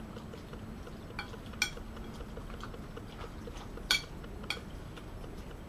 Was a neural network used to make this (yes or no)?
no